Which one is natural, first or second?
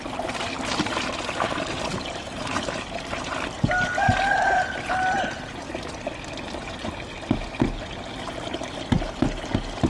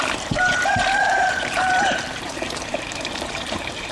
first